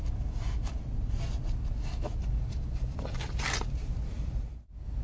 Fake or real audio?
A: real